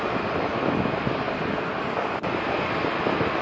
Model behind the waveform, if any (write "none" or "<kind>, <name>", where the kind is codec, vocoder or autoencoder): none